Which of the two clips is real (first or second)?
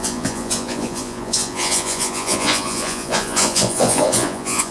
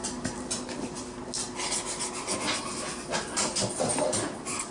second